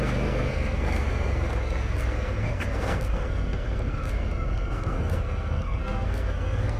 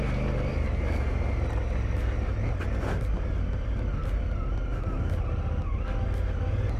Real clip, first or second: second